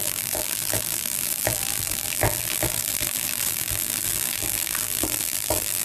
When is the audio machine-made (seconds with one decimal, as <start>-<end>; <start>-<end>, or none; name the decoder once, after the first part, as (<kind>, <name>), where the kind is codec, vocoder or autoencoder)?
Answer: 0.0-5.8 (vocoder, BigVGAN v2)